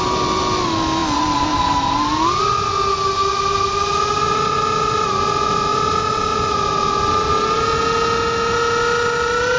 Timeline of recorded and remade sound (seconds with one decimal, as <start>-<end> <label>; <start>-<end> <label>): 0.0-9.6 recorded